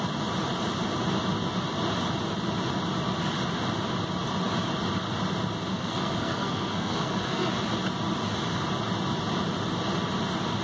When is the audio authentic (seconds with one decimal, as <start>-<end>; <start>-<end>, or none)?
0.0-5.7; 7.5-10.6